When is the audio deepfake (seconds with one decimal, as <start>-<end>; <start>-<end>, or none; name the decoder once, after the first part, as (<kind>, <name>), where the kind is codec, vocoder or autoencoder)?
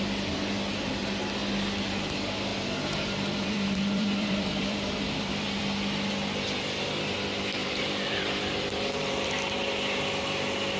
2.5-5.6 (vocoder, BigVGAN v2); 7.6-9.3